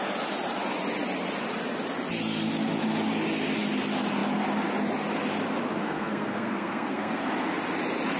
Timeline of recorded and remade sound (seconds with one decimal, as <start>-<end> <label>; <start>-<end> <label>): 0.0-5.8 recorded; 5.8-7.2 remade; 7.2-8.2 recorded